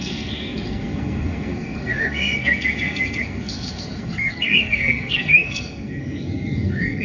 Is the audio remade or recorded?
remade